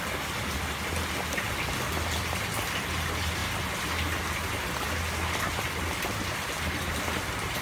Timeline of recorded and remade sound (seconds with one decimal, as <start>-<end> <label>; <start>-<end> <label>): 0.0-7.6 recorded